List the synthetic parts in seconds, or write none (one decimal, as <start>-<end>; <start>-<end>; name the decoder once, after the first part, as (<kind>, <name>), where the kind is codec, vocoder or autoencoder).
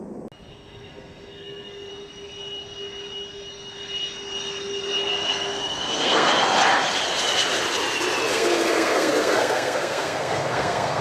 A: 0.5-1.9 (codec, SNAC); 5.1-6.3; 8.3-11.0